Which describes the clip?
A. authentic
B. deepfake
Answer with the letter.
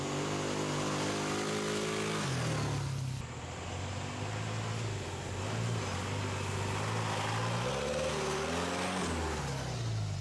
A